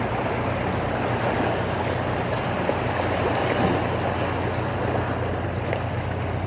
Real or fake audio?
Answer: real